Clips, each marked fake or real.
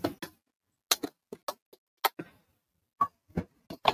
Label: real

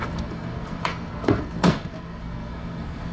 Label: fake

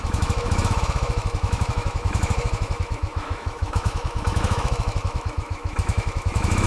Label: fake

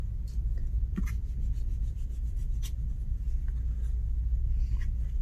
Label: real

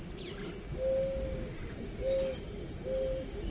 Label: real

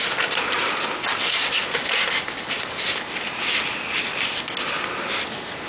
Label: real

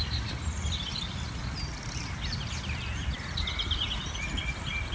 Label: real